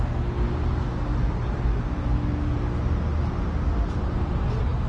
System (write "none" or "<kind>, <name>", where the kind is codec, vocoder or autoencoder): none